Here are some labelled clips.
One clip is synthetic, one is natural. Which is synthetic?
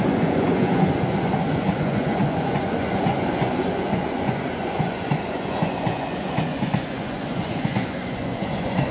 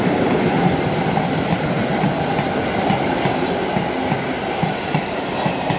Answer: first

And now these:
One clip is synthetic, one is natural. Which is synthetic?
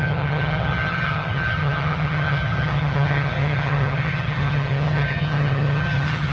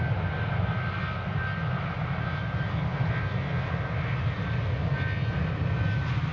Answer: first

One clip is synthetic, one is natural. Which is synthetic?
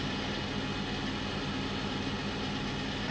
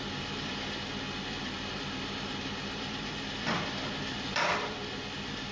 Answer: second